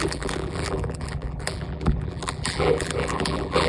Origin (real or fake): fake